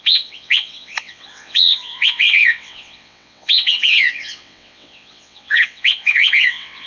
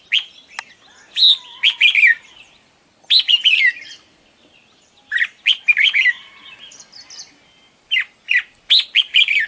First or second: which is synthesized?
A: first